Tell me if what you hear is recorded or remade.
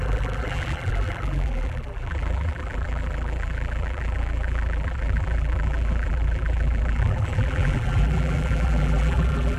remade